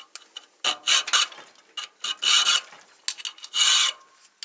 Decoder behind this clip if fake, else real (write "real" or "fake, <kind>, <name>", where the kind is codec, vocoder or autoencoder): real